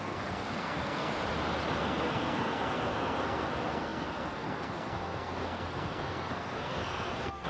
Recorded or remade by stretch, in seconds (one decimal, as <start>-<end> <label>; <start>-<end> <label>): 0.0-1.1 remade; 1.1-1.8 recorded; 1.8-7.5 remade